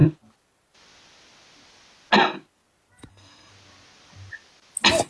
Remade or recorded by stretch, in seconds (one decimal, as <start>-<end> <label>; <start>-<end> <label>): 0.0-3.1 recorded; 3.1-3.5 remade; 3.5-5.1 recorded